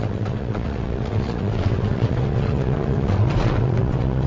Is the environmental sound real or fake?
fake